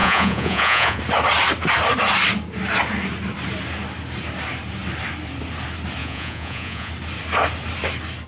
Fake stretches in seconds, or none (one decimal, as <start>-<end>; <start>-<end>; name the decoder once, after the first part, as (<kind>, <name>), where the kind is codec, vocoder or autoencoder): 0.0-1.0 (vocoder, Vocos); 6.0-6.9